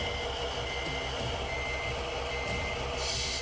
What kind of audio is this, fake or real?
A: real